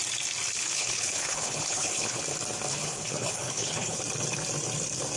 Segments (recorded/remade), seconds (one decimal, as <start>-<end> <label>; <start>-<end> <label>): 0.0-0.6 recorded; 0.6-2.2 remade; 2.2-2.7 recorded; 2.7-4.0 remade; 4.0-5.2 recorded